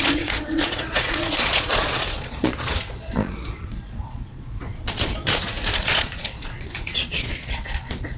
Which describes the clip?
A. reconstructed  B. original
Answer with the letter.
A